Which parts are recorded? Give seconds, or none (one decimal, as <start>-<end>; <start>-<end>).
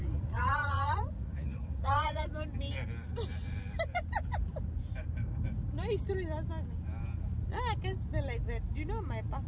2.3-9.5